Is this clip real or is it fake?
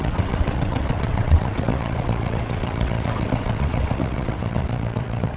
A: fake